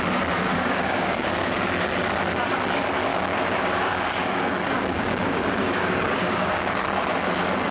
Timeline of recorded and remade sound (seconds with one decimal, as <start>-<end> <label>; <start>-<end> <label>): 0.0-0.5 recorded; 0.5-1.5 remade; 1.5-3.1 recorded; 3.1-6.7 remade; 6.7-7.7 recorded